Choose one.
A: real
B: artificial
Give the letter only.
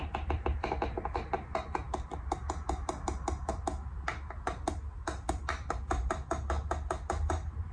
A